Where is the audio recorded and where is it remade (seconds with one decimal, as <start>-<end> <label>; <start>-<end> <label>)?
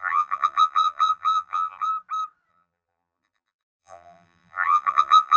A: 0.0-1.9 remade; 1.9-2.5 recorded; 2.5-5.4 remade